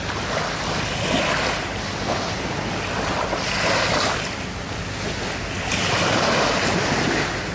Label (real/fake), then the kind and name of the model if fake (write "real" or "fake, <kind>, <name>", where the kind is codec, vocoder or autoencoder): real